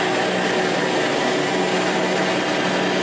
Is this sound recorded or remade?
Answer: recorded